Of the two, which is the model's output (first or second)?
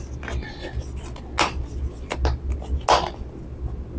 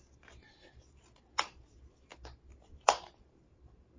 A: second